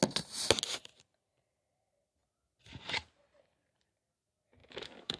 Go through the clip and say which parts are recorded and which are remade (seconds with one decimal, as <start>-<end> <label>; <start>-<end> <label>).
0.0-4.6 recorded; 4.6-5.2 remade